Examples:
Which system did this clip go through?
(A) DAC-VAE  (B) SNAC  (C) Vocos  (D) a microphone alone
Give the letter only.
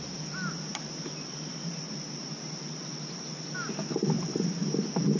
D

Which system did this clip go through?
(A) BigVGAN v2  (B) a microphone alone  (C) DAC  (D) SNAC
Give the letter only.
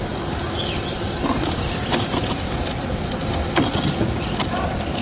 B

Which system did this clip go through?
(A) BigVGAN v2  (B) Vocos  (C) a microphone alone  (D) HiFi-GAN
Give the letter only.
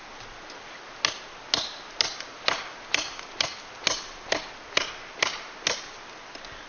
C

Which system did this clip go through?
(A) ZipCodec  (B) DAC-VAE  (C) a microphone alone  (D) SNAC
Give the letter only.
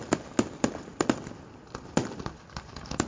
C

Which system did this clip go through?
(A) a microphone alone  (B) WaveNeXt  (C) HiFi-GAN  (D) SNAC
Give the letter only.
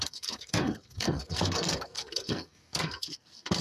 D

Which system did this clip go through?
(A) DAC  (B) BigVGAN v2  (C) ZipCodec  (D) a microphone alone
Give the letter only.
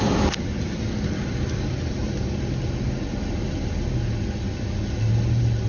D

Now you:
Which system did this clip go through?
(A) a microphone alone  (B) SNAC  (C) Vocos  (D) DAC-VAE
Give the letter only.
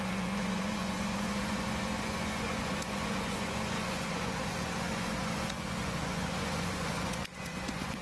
C